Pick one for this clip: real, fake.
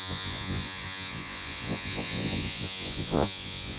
fake